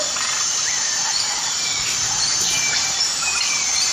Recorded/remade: remade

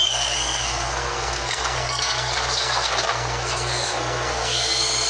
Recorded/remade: remade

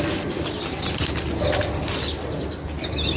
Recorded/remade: recorded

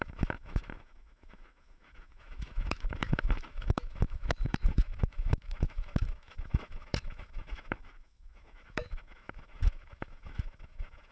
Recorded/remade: remade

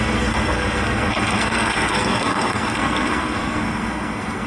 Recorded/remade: remade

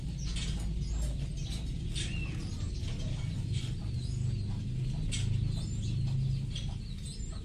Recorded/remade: recorded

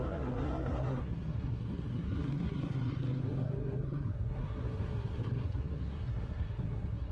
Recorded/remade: remade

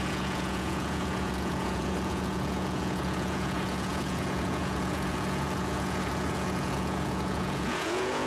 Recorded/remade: remade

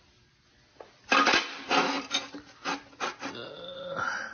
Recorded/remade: recorded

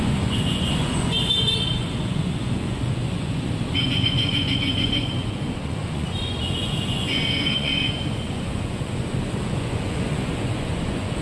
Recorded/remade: remade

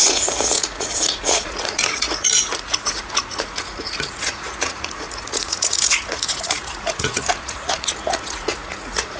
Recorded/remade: remade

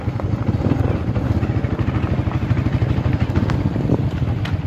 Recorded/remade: recorded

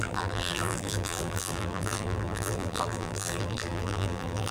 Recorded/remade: remade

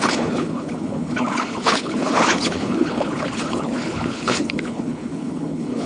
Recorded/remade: remade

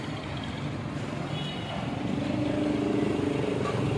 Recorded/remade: recorded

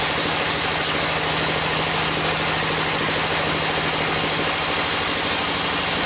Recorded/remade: recorded